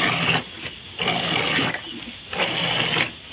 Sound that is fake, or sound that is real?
real